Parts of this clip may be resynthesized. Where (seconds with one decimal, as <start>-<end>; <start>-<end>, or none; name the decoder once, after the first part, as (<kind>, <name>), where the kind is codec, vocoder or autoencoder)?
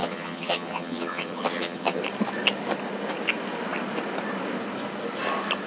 0.0-2.0 (vocoder, HiFi-GAN)